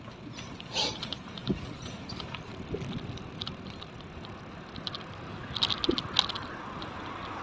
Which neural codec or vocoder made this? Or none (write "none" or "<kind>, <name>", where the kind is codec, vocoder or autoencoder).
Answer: none